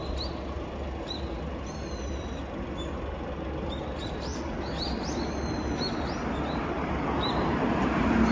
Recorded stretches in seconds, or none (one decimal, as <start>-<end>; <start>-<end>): 0.0-8.3